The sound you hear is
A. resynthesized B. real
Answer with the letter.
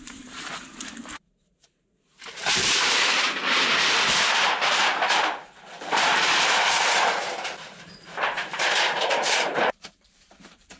A